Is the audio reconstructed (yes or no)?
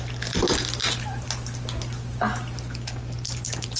no